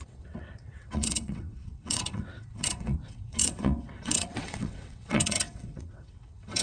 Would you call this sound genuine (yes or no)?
no